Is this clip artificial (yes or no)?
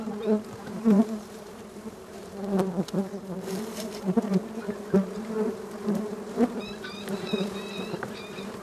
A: yes